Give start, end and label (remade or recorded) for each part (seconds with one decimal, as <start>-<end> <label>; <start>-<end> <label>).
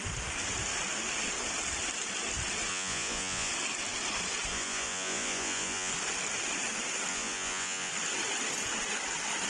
0.0-2.7 recorded; 2.7-3.5 remade; 3.5-4.5 recorded; 4.5-5.9 remade; 5.9-7.1 recorded; 7.1-7.9 remade; 7.9-9.5 recorded